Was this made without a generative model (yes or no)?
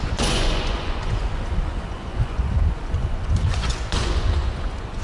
no